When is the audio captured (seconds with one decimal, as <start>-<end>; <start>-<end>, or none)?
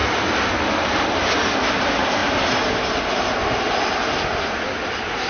0.0-0.6; 1.2-1.7; 2.2-5.3